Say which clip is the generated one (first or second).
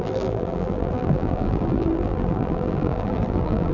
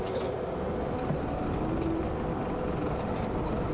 first